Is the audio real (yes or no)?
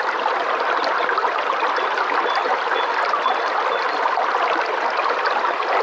yes